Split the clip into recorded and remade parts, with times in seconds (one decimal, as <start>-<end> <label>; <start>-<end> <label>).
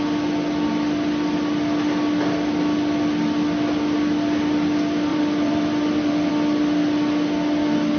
0.0-5.1 recorded; 5.1-6.3 remade; 6.3-8.0 recorded